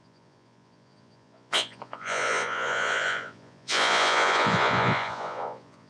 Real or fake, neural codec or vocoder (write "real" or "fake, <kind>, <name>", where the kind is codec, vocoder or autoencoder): fake, vocoder, Vocos